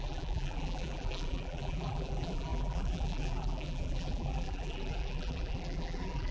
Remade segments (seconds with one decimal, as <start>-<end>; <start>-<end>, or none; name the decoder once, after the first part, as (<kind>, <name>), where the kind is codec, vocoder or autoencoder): 0.0-6.3 (vocoder, BigVGAN v2)